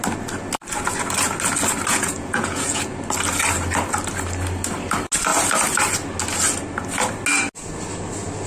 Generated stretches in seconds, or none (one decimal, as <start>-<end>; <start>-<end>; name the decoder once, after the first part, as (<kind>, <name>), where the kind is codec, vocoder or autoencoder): 1.9-2.8 (vocoder, Vocos)